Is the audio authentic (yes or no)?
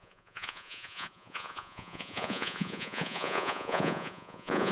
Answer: no